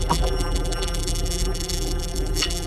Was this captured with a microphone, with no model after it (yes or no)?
no